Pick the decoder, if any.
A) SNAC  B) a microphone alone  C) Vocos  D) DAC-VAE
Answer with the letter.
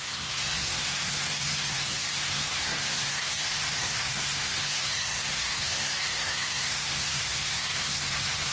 A